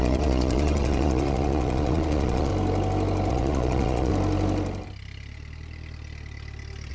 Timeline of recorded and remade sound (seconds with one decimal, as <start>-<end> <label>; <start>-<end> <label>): 0.0-2.5 remade; 2.5-3.3 recorded; 3.3-4.1 remade; 4.1-6.9 recorded